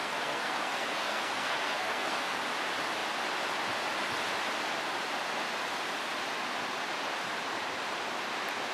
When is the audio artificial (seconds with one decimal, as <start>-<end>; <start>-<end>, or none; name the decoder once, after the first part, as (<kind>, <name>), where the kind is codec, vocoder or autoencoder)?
0.0-2.4 (codec, SNAC)